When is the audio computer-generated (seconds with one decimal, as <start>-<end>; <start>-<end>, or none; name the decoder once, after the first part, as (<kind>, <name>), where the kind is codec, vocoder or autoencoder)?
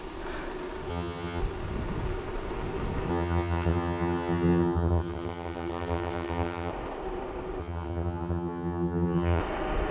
0.9-1.4 (vocoder, HiFi-GAN); 3.1-6.7; 7.6-9.4